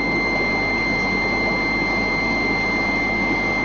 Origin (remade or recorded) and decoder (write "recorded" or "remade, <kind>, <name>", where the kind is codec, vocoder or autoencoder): recorded